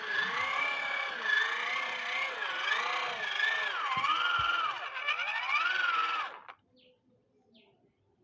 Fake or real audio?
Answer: real